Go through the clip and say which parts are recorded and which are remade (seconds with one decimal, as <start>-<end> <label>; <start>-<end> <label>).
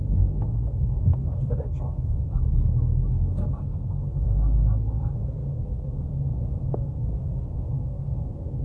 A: 0.0-2.4 remade; 2.4-3.1 recorded; 3.1-8.6 remade